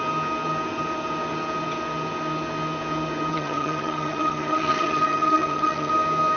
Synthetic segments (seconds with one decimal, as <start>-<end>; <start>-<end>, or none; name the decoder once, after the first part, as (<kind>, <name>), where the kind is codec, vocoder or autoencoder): 3.3-5.9 (vocoder, HiFi-GAN)